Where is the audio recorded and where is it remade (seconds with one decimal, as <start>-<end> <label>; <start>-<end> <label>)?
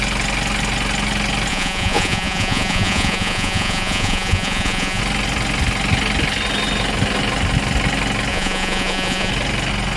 0.0-1.5 recorded; 1.5-5.0 remade; 5.0-8.3 recorded; 8.3-9.3 remade; 9.3-10.0 recorded